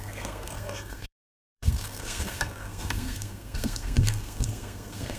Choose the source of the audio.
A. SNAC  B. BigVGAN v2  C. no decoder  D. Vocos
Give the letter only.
A